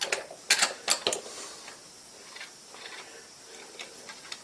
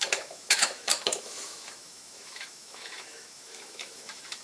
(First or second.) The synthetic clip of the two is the second